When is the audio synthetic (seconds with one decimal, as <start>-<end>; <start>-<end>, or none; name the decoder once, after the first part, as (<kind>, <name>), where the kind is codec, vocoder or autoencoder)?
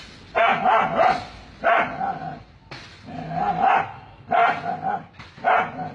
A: none